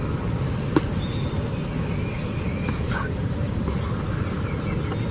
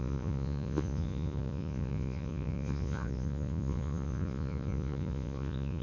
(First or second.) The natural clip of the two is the first